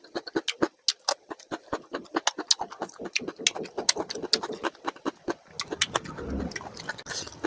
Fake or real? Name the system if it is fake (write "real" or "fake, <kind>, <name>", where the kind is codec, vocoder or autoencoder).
real